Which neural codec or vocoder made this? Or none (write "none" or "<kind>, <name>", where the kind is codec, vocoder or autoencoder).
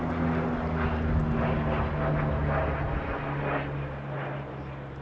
none